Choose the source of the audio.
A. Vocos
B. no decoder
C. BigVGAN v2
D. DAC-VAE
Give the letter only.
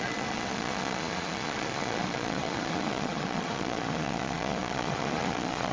A